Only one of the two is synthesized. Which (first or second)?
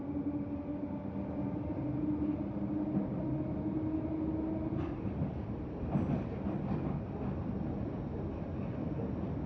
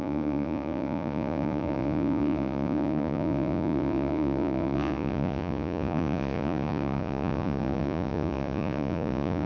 second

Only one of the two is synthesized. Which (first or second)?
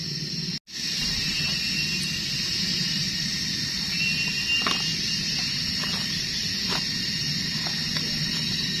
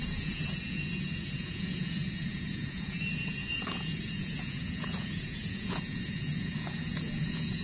second